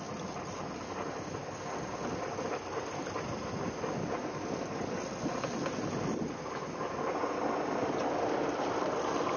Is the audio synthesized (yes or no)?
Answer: no